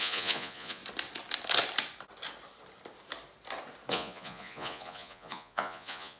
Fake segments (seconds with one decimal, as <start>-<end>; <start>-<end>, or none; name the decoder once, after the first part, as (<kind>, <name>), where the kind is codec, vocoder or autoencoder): 0.0-0.8 (vocoder, Vocos); 3.9-6.2